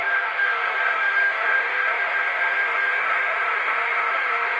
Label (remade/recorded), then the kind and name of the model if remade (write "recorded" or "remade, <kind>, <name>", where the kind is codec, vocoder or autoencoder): remade, autoencoder, DAC-VAE